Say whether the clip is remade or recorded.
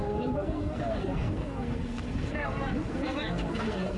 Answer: remade